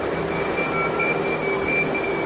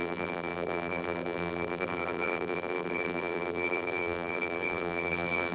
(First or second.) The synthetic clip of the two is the second